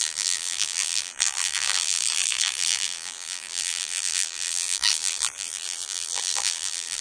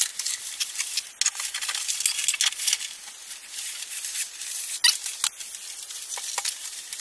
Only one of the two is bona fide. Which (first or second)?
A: second